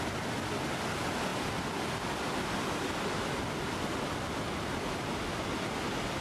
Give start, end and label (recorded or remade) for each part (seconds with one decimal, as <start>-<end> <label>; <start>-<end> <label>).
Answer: 0.0-6.2 recorded